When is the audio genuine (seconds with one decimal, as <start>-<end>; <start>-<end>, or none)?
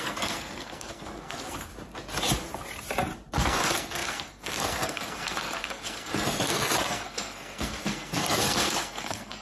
1.7-3.3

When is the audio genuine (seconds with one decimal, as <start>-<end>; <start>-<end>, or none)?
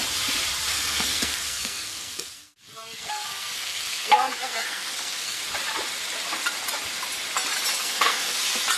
0.0-0.7; 5.4-7.8; 8.4-8.8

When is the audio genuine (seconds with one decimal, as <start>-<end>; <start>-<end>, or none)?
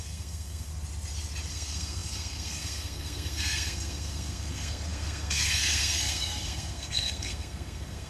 0.7-1.5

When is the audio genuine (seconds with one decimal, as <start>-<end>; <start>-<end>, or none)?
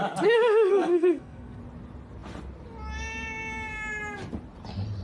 0.0-0.7; 1.6-5.0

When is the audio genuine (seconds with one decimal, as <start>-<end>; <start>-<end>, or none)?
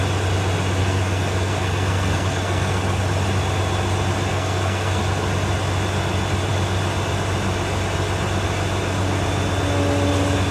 0.0-0.8; 3.0-4.3; 5.0-10.5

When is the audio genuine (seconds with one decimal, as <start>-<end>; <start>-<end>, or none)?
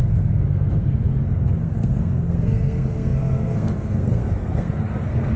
none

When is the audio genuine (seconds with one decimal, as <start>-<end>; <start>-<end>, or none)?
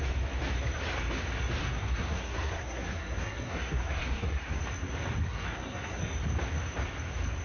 0.0-1.6; 4.6-5.2; 6.0-7.4